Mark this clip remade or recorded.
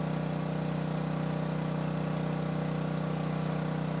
recorded